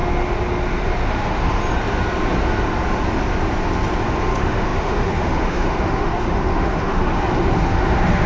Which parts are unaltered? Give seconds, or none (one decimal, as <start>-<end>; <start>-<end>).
0.0-1.1; 1.6-4.2